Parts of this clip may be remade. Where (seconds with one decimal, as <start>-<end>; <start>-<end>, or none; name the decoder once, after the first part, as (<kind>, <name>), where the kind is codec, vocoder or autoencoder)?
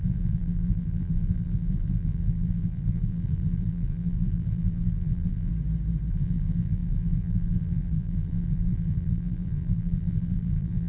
0.0-5.5 (vocoder, BigVGAN v2); 6.1-10.9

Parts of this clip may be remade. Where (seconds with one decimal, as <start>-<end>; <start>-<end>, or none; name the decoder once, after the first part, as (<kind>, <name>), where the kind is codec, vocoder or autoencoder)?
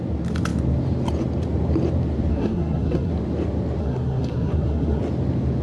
2.3-3.1 (codec, SNAC); 3.8-5.0